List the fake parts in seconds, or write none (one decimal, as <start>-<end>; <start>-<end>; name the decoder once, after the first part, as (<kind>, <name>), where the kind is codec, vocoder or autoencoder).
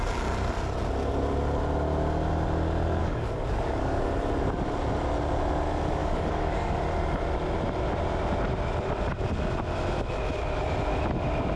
3.0-4.0 (codec, DAC); 6.0-6.8